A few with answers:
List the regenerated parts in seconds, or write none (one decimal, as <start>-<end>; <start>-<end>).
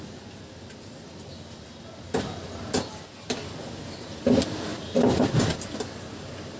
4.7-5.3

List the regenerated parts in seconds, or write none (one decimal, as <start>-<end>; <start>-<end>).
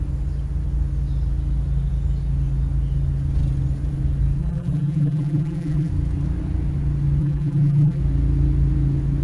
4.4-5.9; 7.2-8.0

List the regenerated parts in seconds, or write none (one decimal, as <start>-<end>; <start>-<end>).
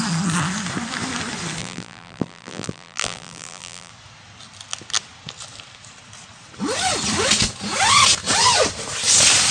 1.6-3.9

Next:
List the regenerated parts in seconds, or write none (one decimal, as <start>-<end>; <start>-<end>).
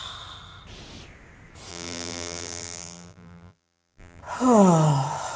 1.7-4.2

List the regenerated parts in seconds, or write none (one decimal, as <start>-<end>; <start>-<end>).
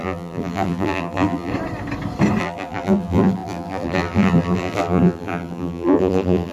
0.0-1.5; 2.4-6.5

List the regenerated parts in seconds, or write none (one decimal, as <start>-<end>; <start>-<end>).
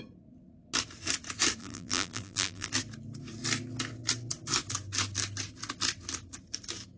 1.6-2.7